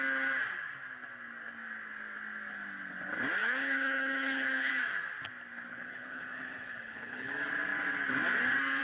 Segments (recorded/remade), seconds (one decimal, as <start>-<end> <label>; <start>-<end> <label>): 0.0-3.4 recorded; 3.4-4.7 remade; 4.7-5.7 recorded; 5.7-7.3 remade; 7.3-8.8 recorded